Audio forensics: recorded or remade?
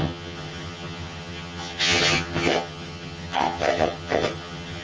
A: remade